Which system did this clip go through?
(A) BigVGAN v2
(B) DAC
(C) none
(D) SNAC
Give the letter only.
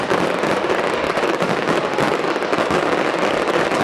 B